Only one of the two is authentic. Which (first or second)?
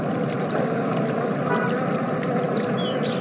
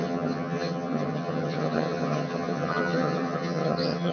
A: first